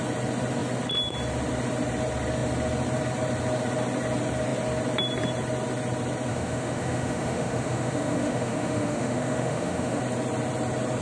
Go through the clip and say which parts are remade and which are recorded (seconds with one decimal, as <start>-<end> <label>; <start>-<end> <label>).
0.0-6.3 recorded; 6.3-10.0 remade; 10.0-11.0 recorded